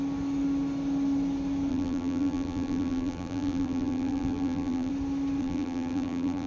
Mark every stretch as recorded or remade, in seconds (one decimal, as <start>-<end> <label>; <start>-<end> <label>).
0.0-1.7 recorded; 1.7-4.9 remade; 4.9-5.4 recorded; 5.4-6.5 remade